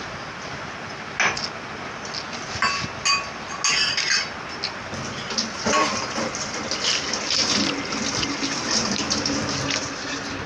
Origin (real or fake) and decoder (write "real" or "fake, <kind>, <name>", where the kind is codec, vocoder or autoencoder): real